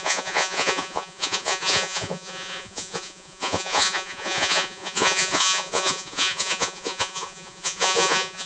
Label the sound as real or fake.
fake